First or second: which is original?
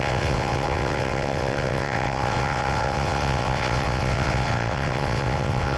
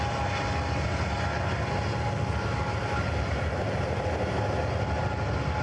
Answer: second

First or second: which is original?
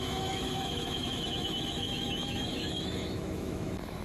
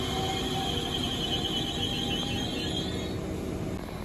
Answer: second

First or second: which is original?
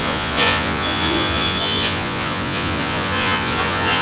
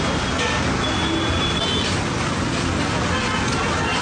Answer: second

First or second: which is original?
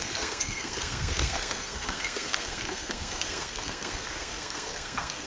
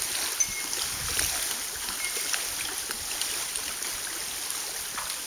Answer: second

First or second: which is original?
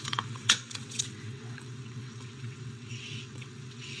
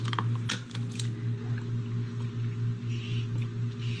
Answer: second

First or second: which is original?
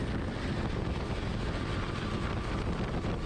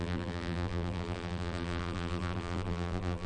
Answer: first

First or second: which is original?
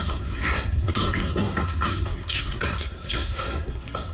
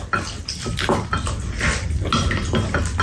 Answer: second